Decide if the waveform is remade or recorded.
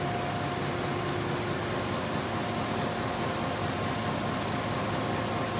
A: recorded